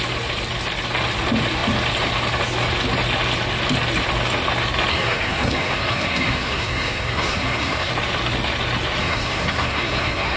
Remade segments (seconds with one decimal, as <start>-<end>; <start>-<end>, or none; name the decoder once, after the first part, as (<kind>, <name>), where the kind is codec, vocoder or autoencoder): 4.9-7.9 (codec, SNAC); 9.0-10.4